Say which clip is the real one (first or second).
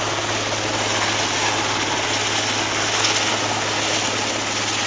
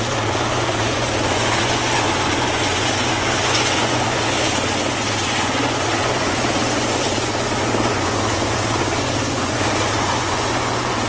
first